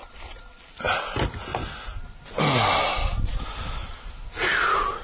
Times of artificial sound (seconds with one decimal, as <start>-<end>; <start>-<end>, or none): none